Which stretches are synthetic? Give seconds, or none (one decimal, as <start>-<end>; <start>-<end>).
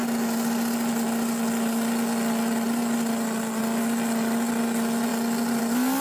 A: none